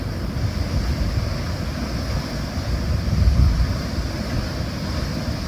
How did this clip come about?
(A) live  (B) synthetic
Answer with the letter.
A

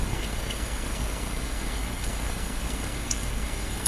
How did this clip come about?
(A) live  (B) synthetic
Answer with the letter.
B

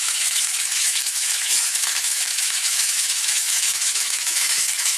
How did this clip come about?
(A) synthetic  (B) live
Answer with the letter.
A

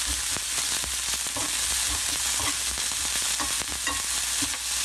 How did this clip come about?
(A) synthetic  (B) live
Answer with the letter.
B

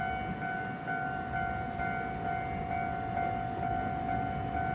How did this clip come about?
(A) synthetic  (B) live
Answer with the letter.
B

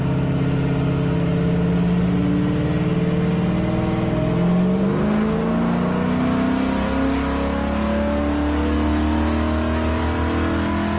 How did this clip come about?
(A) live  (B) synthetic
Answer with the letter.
A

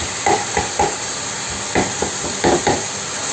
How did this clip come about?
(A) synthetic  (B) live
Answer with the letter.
B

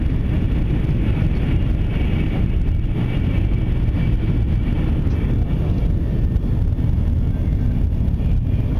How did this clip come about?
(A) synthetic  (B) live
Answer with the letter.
B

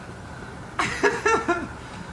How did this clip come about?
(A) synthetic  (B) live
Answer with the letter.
B